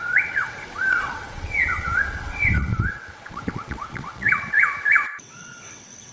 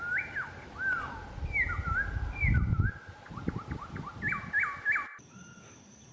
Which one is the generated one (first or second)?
first